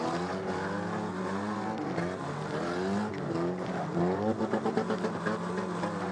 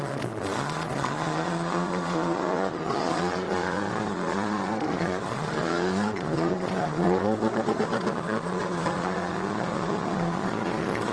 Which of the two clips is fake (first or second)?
second